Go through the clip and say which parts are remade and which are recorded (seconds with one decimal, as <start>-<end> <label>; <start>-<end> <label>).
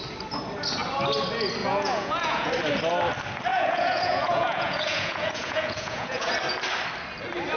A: 0.0-1.6 recorded; 1.6-2.5 remade; 2.5-3.5 recorded; 3.5-6.3 remade; 6.3-7.6 recorded